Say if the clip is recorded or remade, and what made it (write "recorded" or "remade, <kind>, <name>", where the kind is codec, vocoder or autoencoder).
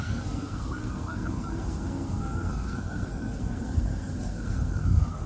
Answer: remade, codec, SNAC